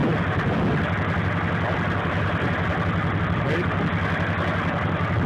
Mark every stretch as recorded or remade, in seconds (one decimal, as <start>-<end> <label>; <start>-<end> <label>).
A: 0.0-5.3 recorded